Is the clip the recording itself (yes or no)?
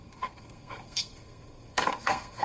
no